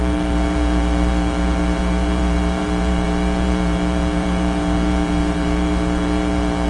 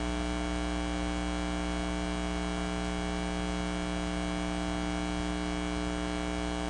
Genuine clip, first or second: second